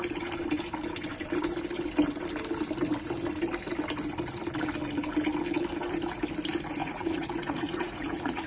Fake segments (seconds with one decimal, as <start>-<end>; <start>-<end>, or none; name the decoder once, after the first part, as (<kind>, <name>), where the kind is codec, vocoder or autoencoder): 6.8-8.5 (vocoder, Vocos)